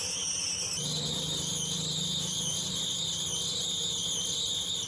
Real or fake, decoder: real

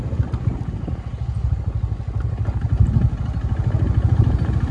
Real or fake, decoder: real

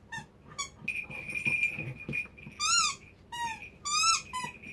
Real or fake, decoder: real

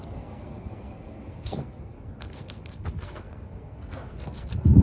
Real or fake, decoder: fake, codec, SNAC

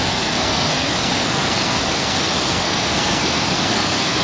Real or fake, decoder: fake, codec, SNAC